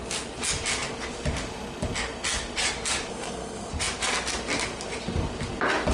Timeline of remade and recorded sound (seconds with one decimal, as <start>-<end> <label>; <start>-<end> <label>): 0.0-3.1 recorded; 3.1-3.7 remade; 3.7-5.9 recorded